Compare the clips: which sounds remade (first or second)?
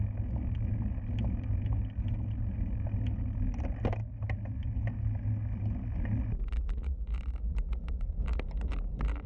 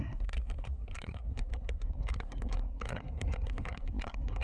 second